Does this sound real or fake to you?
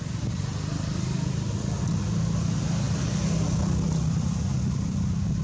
real